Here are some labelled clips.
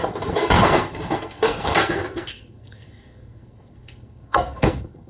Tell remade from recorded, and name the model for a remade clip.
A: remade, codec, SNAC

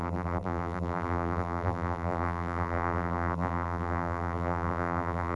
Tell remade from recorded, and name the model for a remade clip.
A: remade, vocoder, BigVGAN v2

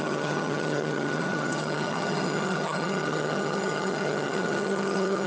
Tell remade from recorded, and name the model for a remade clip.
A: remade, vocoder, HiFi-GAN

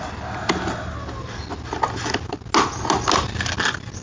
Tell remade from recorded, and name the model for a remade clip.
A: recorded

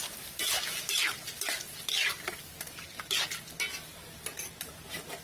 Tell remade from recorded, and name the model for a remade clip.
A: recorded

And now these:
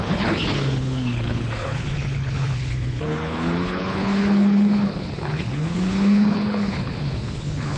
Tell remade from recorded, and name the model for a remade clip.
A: remade, codec, HILCodec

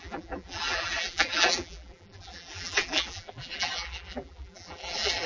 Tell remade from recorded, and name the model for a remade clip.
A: remade, vocoder, BigVGAN v2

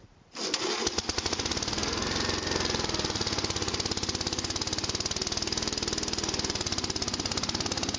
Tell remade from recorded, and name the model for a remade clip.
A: recorded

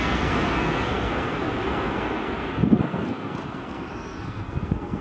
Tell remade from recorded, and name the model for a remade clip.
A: remade, codec, SNAC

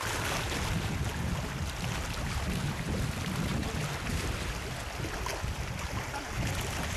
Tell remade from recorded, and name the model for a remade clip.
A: recorded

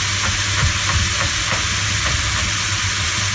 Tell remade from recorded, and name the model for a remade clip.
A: recorded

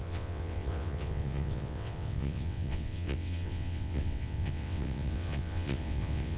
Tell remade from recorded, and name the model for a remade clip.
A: remade, vocoder, WaveNeXt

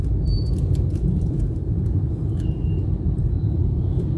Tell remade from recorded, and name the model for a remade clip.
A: remade, vocoder, BigVGAN v2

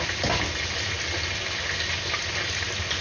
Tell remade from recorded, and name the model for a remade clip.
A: recorded